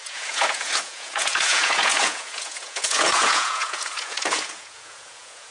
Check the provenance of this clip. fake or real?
fake